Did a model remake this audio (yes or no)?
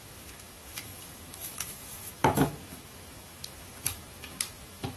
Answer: yes